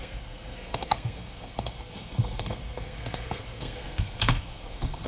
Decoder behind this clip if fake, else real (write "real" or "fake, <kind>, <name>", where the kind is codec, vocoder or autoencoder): fake, codec, SNAC